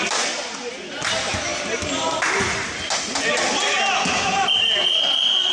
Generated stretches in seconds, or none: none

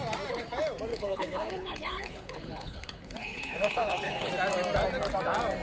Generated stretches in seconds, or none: 0.9-4.3 (codec, HILCodec)

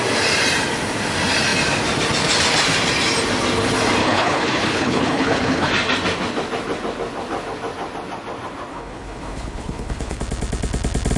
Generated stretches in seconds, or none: 4.0-5.7 (codec, HILCodec); 8.7-10.2

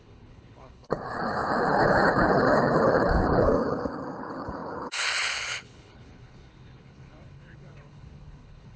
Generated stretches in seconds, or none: 0.0-8.8 (codec, HILCodec)

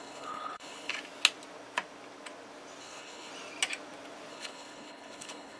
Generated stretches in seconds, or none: 0.0-0.9 (codec, HILCodec); 2.8-3.3; 4.3-5.6

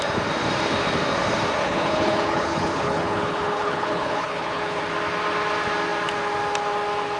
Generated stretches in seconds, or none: 1.6-4.8 (codec, HILCodec)